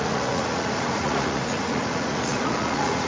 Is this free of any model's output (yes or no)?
no